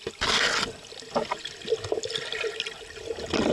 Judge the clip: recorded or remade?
recorded